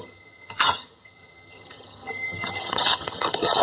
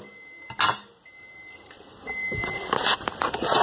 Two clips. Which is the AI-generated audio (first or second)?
first